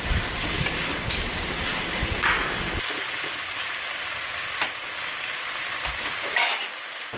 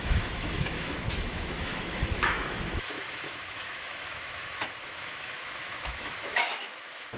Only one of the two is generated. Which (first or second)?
second